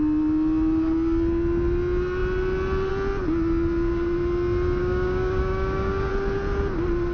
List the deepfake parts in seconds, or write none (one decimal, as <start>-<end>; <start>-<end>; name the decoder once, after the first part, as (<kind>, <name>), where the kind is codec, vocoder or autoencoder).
4.8-6.1 (codec, DAC)